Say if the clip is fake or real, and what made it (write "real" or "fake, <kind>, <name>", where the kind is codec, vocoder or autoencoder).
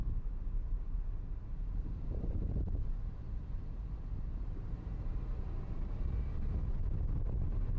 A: fake, vocoder, BigVGAN v2